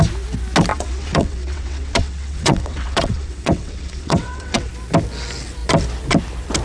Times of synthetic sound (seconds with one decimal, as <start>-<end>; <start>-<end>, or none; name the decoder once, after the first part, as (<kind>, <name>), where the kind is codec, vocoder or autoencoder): 0.7-4.7 (vocoder, WaveNeXt)